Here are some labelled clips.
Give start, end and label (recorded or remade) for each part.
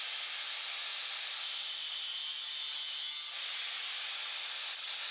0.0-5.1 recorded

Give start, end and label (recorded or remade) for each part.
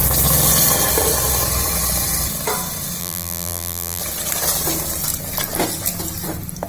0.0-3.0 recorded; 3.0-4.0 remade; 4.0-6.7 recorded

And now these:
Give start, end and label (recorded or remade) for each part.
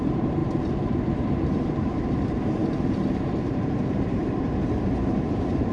0.0-0.4 remade; 0.4-1.1 recorded; 1.1-5.7 remade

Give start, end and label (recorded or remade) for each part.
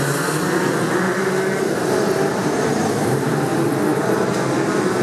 0.0-2.4 recorded; 2.4-3.3 remade; 3.3-3.9 recorded; 3.9-4.5 remade; 4.5-5.0 recorded